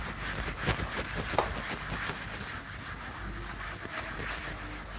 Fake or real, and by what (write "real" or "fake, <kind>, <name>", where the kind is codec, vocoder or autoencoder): real